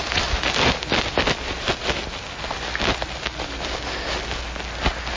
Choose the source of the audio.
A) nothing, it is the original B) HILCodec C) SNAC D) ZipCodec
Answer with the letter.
A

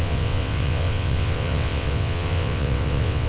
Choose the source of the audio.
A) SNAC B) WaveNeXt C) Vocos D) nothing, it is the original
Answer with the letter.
B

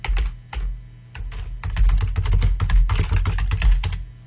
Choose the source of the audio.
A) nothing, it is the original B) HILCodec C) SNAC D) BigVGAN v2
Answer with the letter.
A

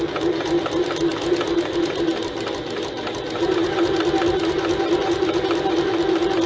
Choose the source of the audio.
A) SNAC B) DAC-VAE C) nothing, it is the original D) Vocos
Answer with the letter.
C